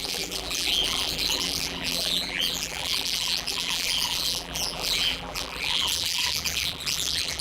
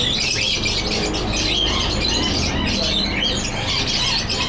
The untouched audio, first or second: second